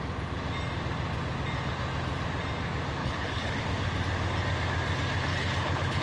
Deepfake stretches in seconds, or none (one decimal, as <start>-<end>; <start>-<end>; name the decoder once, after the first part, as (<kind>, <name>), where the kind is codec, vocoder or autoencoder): 3.0-3.6 (codec, HILCodec); 5.3-6.0